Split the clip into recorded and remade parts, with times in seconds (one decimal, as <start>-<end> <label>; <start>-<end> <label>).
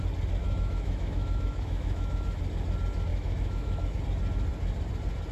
0.0-0.4 recorded; 0.4-2.4 remade; 2.4-3.1 recorded; 3.1-4.0 remade; 4.0-5.3 recorded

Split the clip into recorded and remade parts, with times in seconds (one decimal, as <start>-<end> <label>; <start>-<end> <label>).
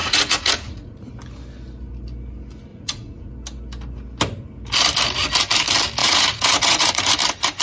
0.0-1.1 remade; 1.1-2.7 recorded; 2.7-3.3 remade; 3.3-6.0 recorded; 6.0-7.1 remade; 7.1-7.6 recorded